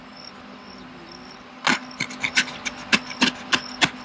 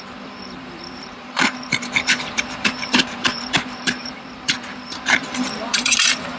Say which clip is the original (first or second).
first